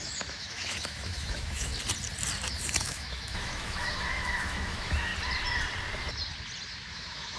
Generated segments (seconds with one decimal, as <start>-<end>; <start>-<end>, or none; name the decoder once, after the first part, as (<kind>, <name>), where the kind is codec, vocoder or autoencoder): 0.0-1.7 (autoencoder, DAC-VAE); 2.8-5.1; 6.9-7.4